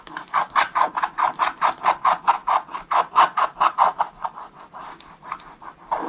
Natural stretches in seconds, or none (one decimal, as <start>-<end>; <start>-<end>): 0.0-2.4